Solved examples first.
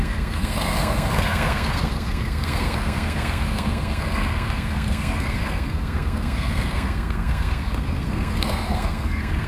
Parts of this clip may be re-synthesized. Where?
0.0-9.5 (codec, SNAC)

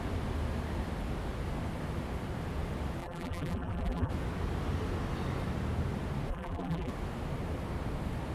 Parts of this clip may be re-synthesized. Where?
3.0-4.1 (vocoder, BigVGAN v2); 6.3-6.9

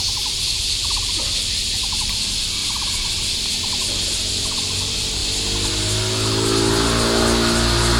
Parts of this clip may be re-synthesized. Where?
2.6-3.4 (vocoder, BigVGAN v2)

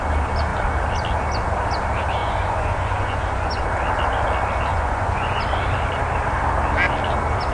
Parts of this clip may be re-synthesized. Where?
2.2-3.6 (vocoder, Vocos); 4.7-5.4

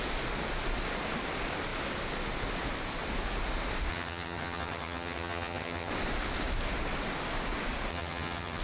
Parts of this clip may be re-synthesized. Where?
3.9-5.9 (vocoder, HiFi-GAN); 7.9-8.6